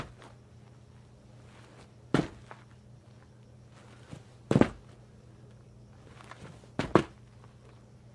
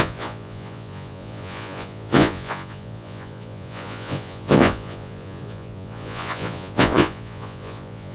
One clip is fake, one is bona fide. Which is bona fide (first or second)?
first